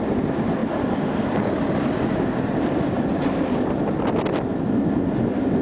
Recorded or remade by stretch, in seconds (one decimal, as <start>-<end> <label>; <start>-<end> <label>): 0.0-5.6 recorded